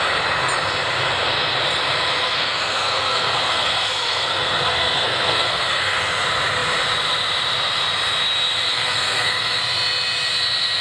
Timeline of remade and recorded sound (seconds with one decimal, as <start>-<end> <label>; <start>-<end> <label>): 0.0-2.2 recorded; 2.2-6.1 remade; 6.1-8.7 recorded; 8.7-9.6 remade; 9.6-10.8 recorded